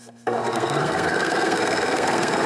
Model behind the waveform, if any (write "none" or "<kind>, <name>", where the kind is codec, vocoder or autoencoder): codec, SNAC